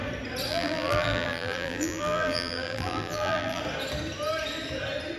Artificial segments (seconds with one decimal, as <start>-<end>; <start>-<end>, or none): 0.5-3.6